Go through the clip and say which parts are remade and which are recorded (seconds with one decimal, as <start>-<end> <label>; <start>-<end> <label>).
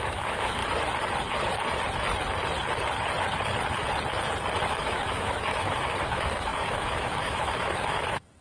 0.0-0.6 remade; 0.6-4.7 recorded; 4.7-8.4 remade